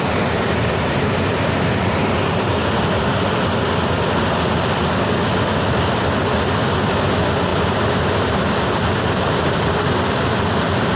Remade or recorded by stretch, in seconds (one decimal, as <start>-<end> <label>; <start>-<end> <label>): 0.0-10.9 recorded